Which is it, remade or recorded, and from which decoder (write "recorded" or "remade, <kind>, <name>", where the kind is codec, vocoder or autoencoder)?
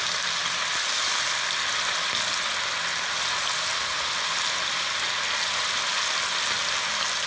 recorded